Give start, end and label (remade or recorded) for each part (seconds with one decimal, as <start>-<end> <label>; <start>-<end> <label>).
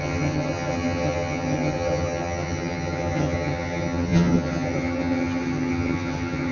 0.0-6.5 remade